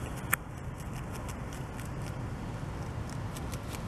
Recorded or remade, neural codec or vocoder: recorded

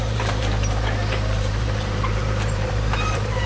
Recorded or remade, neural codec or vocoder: remade, vocoder, BigVGAN v2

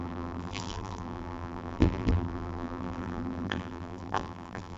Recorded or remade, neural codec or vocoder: remade, vocoder, BigVGAN v2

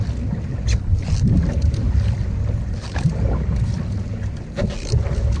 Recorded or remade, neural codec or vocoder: recorded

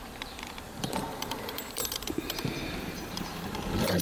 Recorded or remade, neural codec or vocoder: remade, vocoder, BigVGAN v2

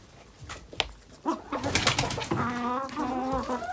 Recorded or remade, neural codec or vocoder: recorded